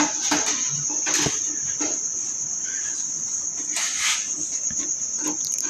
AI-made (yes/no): no